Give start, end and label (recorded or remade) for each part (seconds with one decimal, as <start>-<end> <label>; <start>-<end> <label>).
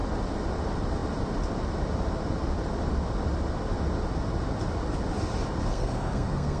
0.0-5.7 recorded; 5.7-6.6 remade